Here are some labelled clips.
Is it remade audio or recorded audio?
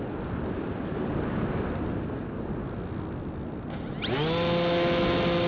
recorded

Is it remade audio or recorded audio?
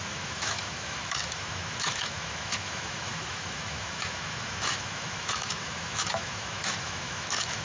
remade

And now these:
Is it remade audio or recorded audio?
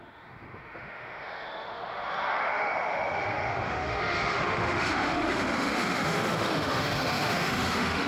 remade